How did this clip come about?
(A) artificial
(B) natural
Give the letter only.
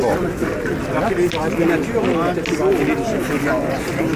B